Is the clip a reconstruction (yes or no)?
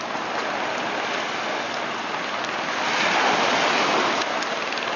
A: no